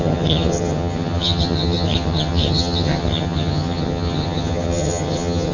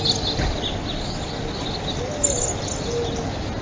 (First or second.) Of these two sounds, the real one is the second